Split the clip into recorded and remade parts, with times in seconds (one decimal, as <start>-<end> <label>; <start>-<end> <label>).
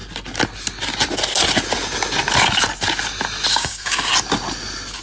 0.0-3.5 recorded; 3.5-4.1 remade; 4.1-5.0 recorded